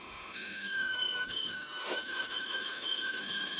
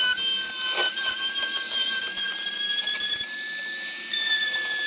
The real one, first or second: second